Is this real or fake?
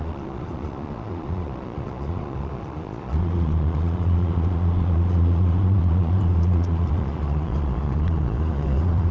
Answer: fake